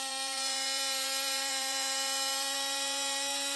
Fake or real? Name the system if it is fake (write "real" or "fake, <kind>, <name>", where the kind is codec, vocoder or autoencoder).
fake, vocoder, BigVGAN v2